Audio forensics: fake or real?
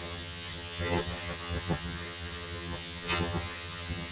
fake